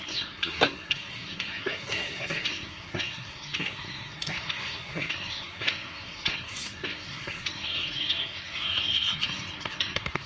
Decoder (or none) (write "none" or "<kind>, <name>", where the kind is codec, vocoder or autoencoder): codec, SNAC